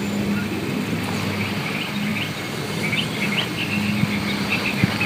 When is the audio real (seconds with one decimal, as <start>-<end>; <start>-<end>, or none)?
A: 0.0-5.1